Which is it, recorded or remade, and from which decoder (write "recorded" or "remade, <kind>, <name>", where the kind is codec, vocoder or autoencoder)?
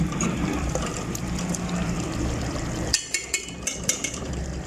remade, vocoder, BigVGAN v2